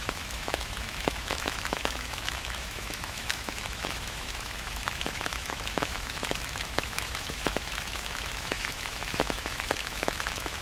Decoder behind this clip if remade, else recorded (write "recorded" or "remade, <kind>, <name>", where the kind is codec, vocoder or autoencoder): remade, autoencoder, DAC-VAE